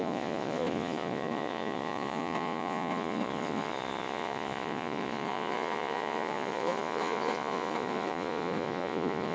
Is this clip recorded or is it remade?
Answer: remade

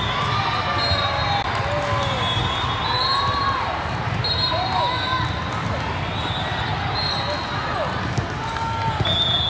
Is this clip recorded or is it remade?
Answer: recorded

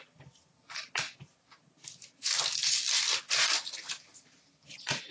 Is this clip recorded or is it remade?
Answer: recorded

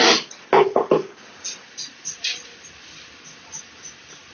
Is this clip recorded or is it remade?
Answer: recorded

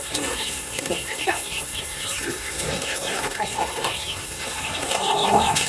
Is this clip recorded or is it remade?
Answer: remade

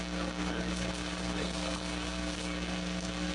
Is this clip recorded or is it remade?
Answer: remade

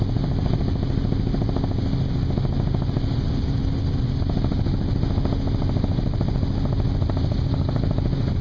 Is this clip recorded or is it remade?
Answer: recorded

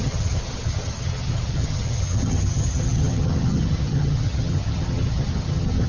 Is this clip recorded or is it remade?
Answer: remade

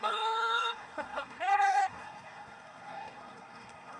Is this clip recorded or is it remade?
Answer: remade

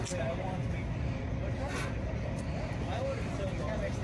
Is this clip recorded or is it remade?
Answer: recorded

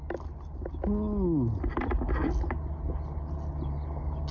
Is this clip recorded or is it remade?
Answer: recorded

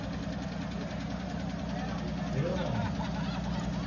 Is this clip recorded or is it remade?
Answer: recorded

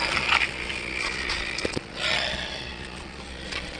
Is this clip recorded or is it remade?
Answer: remade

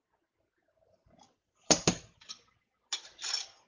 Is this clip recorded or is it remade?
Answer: recorded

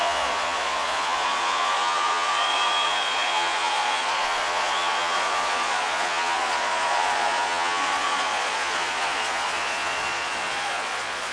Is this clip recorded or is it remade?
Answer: remade